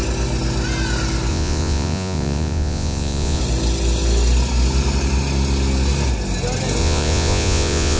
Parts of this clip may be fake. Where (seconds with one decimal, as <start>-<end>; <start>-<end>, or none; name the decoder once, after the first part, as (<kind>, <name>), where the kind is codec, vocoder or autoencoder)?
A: 1.3-3.4 (vocoder, Vocos); 6.8-8.0